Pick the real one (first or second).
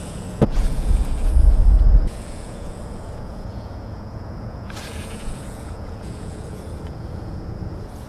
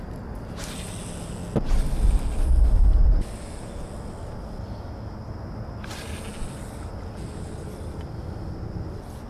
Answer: second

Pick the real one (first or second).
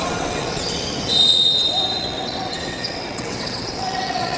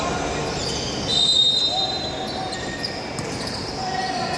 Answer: second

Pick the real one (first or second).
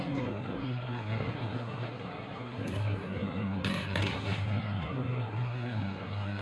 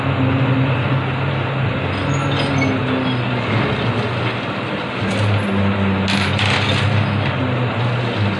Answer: second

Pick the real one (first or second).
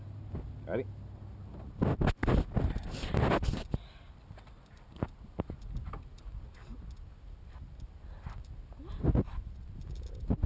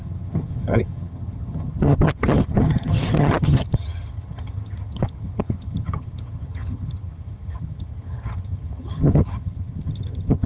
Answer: first